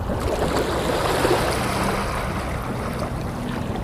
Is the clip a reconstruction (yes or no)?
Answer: no